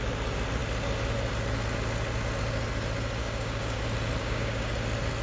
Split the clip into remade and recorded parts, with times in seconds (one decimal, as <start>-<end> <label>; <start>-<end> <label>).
0.0-3.2 recorded; 3.2-3.8 remade; 3.8-4.2 recorded; 4.2-4.7 remade; 4.7-5.2 recorded